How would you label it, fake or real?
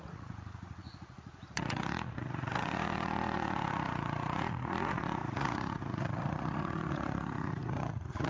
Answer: fake